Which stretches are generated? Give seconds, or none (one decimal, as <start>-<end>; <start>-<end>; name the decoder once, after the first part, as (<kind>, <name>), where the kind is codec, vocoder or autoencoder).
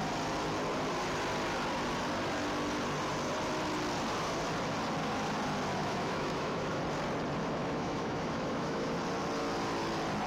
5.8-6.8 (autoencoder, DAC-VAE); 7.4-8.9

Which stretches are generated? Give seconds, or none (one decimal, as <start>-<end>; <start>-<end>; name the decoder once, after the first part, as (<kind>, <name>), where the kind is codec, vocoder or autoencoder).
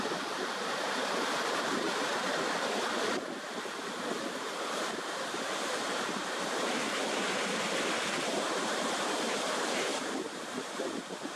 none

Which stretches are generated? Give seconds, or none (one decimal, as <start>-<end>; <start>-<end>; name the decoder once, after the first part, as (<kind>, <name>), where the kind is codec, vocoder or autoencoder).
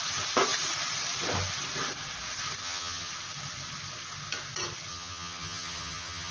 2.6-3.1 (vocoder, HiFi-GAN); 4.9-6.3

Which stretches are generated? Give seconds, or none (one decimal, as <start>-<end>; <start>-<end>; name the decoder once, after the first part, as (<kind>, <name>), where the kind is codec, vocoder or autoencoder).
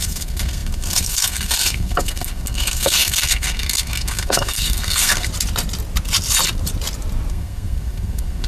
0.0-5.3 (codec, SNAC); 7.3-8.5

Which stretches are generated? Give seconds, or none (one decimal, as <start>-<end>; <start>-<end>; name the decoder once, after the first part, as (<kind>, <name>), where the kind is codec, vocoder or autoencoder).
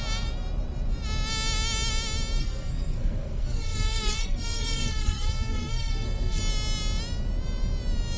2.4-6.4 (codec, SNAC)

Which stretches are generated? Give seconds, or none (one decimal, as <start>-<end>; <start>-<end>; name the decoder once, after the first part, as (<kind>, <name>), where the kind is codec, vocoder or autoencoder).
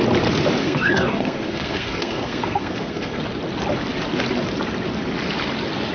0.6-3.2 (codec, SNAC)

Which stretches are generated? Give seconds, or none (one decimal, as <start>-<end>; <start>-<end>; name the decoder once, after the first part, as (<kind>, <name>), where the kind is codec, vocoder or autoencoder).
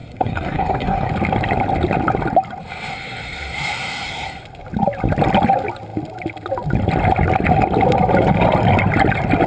0.0-1.1 (codec, SNAC); 2.9-4.4